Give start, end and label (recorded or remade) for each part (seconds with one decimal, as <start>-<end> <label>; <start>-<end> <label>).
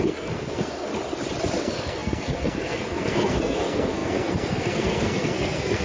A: 0.0-0.9 remade; 0.9-1.6 recorded; 1.6-5.8 remade